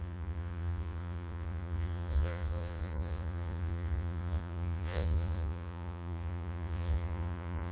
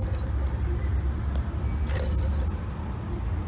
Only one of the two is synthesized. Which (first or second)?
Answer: first